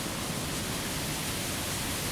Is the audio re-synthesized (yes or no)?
no